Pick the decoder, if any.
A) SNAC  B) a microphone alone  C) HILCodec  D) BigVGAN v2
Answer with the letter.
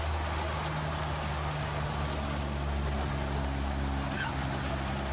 B